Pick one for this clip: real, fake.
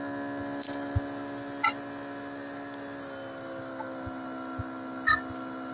real